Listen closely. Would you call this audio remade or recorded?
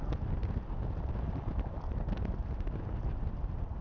recorded